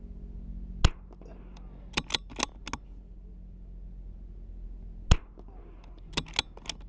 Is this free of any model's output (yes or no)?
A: yes